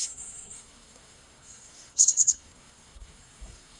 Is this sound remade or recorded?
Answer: remade